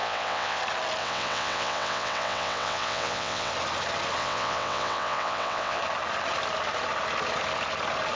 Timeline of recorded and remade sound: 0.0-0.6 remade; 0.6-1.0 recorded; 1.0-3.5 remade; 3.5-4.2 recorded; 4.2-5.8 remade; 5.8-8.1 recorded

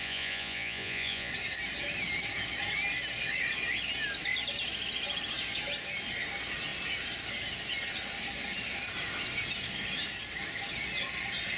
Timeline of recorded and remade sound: 0.0-1.3 remade; 1.3-11.6 recorded